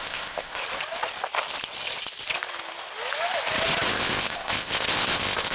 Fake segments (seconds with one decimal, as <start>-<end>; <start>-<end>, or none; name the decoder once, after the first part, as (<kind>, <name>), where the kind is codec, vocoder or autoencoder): 0.0-0.6 (codec, ZipCodec); 3.9-5.5